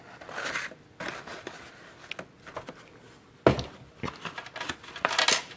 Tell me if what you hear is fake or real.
real